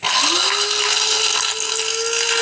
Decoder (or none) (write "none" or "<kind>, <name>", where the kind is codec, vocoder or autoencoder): none